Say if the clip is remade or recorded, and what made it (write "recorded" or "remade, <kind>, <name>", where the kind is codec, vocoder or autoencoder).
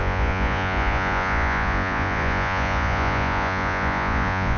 remade, vocoder, Vocos